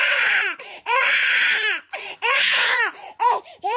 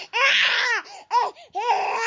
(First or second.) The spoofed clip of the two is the first